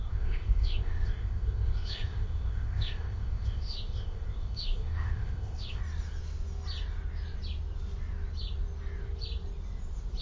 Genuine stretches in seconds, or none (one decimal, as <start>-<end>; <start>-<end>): 5.8-10.2